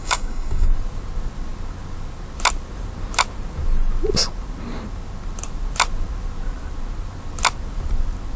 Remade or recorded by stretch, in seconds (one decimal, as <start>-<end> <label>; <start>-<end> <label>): 0.0-0.7 remade; 0.7-8.4 recorded